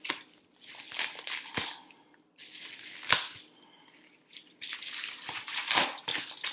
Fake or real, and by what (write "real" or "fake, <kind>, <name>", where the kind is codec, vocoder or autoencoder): real